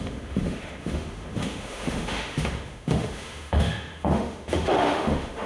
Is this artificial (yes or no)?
yes